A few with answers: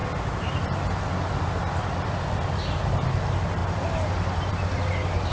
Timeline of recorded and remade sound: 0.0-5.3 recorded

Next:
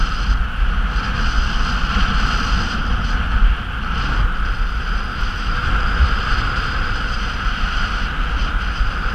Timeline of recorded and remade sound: 0.0-5.1 recorded; 5.1-5.7 remade; 5.7-9.1 recorded